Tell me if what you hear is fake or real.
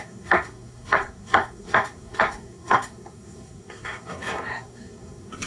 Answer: fake